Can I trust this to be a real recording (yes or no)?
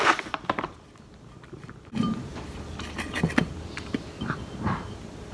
yes